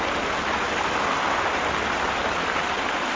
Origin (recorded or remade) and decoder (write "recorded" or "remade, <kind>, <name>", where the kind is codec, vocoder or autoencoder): recorded